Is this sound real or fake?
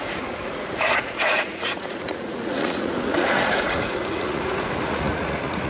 fake